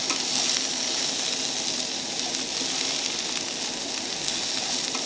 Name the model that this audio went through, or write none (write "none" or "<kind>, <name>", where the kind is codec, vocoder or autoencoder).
none